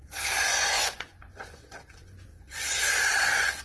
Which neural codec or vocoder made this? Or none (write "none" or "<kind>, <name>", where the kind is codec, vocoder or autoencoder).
vocoder, Vocos